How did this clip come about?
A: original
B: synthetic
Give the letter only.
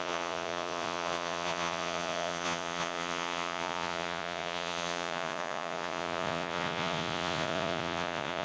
B